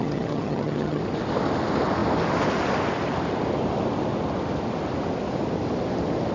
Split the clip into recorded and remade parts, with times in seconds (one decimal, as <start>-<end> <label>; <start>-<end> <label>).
0.0-1.0 remade; 1.0-6.3 recorded